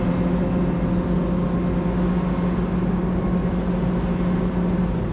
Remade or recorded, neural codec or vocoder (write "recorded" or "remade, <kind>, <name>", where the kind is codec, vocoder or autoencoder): recorded